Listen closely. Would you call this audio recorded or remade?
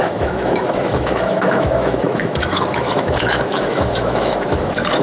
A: remade